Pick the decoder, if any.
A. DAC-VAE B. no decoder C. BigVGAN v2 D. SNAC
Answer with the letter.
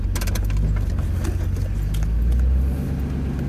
B